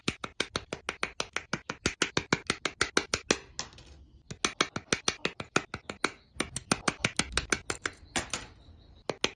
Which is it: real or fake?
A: real